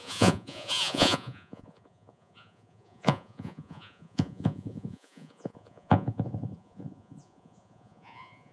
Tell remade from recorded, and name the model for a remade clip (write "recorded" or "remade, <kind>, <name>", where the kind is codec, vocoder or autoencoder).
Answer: remade, vocoder, Vocos